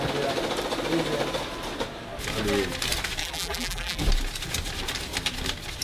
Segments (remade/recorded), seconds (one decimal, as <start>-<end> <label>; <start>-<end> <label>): 0.0-3.2 recorded; 3.2-4.0 remade; 4.0-5.8 recorded